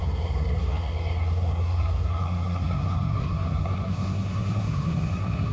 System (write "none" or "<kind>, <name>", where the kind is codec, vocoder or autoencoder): codec, SNAC